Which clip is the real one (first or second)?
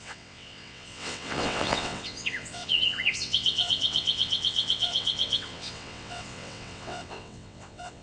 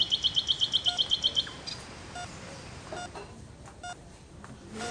second